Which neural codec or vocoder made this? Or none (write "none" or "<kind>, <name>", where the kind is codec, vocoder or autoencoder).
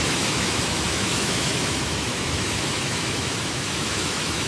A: autoencoder, DAC-VAE